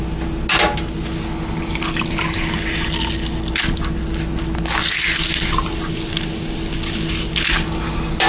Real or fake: real